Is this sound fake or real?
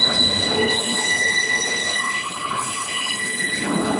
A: fake